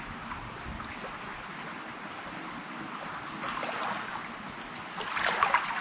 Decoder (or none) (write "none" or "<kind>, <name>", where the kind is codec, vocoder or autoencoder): none